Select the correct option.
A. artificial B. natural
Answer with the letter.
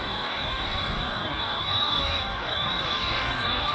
A